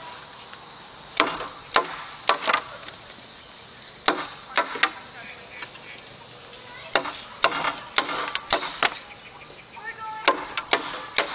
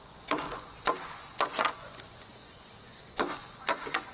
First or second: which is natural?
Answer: first